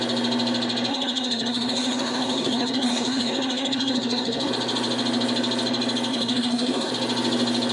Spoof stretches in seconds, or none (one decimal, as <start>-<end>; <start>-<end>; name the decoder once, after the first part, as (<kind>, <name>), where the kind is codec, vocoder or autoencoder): 0.9-4.5 (codec, SNAC); 6.1-6.9